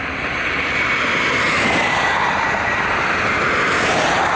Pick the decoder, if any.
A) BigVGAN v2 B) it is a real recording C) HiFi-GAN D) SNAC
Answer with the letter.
B